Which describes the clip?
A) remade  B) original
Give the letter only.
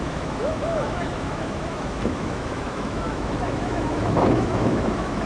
A